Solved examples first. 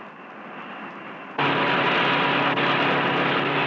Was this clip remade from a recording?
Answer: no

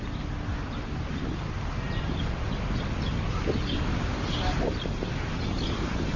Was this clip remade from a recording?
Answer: no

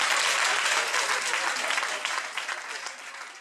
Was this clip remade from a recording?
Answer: no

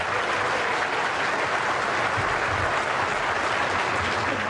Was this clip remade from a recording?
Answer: no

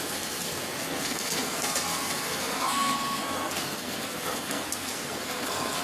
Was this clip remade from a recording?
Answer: yes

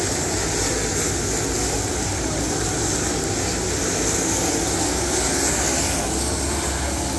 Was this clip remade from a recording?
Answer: no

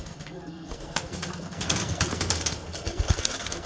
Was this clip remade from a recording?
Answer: yes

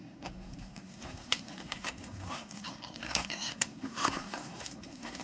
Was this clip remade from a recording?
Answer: yes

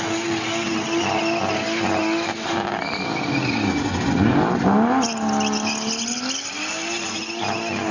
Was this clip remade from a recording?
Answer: no